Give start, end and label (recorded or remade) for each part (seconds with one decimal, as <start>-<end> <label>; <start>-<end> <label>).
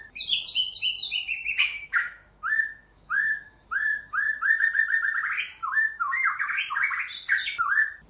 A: 0.0-1.4 recorded; 1.4-4.6 remade; 4.6-5.6 recorded; 5.6-6.7 remade; 6.7-8.1 recorded